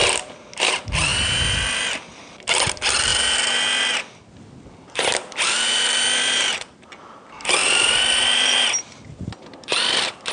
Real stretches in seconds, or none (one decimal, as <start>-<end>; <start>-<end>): 0.0-7.6; 9.0-10.3

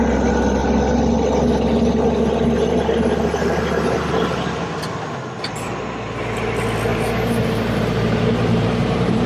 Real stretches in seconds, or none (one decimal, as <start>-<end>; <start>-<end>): 0.0-6.9

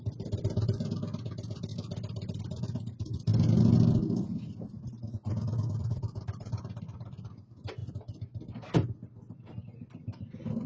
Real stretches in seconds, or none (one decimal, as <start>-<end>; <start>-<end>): 1.7-2.4; 3.3-5.8; 7.8-9.6

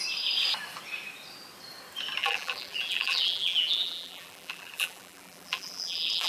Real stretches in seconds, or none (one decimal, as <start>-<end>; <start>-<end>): 0.0-2.2

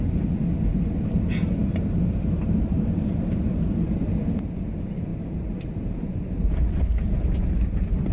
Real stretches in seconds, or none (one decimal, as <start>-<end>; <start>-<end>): 0.0-0.7; 3.6-5.1; 7.1-8.1

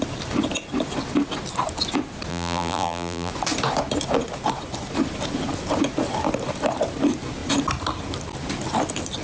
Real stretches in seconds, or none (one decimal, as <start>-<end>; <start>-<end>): 0.0-2.3; 3.3-9.2

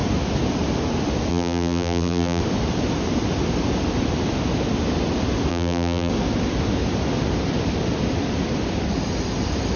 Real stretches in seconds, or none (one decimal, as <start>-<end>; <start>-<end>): 0.0-1.3; 2.4-5.5; 6.1-9.8

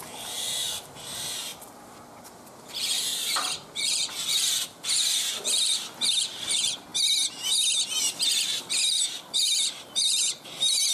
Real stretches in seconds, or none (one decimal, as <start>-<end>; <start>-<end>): 1.5-2.3; 6.9-8.0